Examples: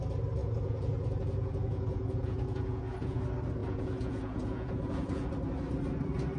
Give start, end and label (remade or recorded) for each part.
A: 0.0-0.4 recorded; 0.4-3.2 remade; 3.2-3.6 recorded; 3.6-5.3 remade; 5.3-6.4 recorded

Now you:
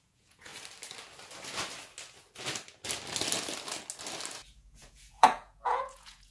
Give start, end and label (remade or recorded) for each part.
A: 0.0-0.5 remade; 0.5-4.3 recorded; 4.3-6.3 remade

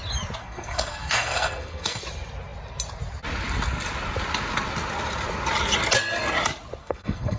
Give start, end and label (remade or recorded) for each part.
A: 0.0-0.4 recorded; 0.4-2.0 remade; 2.0-6.8 recorded; 6.8-7.4 remade

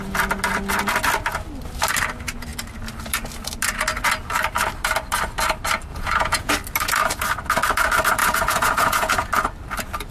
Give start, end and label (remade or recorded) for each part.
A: 0.0-5.9 recorded; 5.9-6.5 remade; 6.5-8.2 recorded; 8.2-9.3 remade; 9.3-10.1 recorded

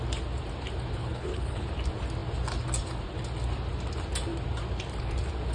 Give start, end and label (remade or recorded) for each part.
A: 0.0-1.0 recorded; 1.0-1.7 remade; 1.7-5.5 recorded